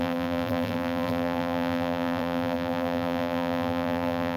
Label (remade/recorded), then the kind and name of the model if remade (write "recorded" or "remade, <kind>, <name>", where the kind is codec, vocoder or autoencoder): remade, vocoder, BigVGAN v2